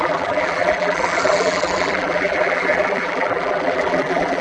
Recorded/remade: remade